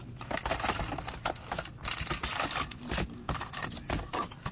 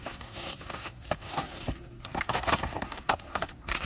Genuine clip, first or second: first